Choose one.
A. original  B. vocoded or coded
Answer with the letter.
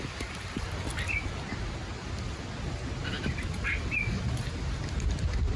A